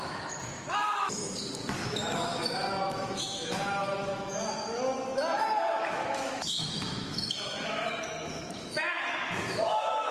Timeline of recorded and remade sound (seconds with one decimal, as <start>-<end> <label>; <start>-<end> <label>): 0.0-10.1 remade